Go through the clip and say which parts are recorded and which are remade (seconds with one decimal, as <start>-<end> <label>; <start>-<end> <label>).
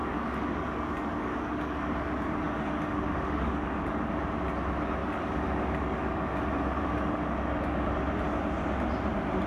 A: 0.0-4.1 remade; 4.1-5.0 recorded; 5.0-7.9 remade; 7.9-9.5 recorded